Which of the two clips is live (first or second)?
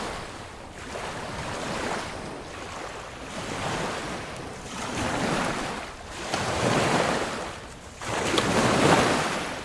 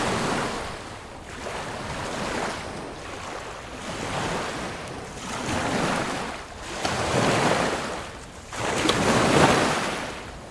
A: second